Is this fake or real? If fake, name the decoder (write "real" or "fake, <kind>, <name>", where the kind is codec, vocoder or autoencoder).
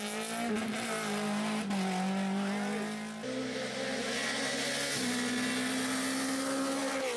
real